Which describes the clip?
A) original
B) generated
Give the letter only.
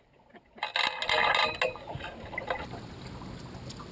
A